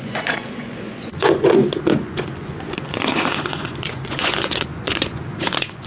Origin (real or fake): fake